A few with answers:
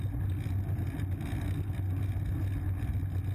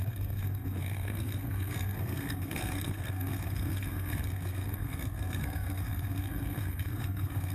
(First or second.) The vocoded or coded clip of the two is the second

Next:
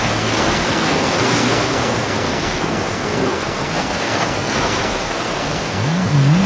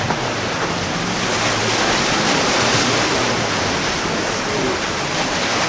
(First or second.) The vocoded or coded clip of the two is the first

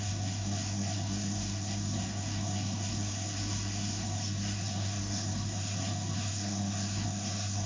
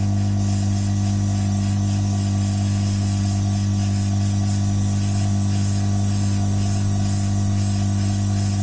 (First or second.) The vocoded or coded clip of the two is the first